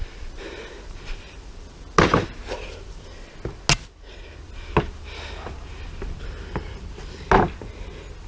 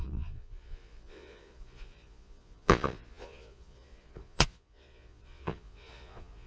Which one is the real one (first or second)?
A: first